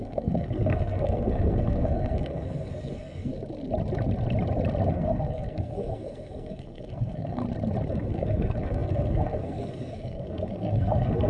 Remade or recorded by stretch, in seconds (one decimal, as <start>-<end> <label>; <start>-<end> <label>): 0.0-3.3 remade; 3.3-4.9 recorded; 4.9-7.4 remade; 7.4-7.9 recorded; 7.9-11.3 remade